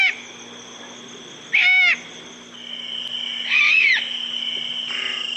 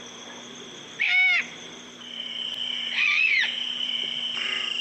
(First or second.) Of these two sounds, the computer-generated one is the second